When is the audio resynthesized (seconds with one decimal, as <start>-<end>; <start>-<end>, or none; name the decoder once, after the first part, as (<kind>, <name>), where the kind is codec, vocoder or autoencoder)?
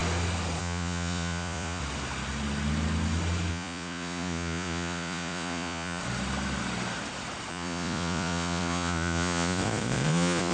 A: 0.6-1.8 (vocoder, Vocos); 3.5-6.0; 7.5-10.5